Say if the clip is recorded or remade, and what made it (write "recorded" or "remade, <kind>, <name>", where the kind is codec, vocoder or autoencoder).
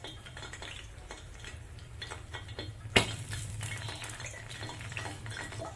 remade, vocoder, BigVGAN v2